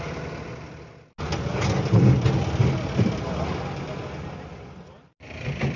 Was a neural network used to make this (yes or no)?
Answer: no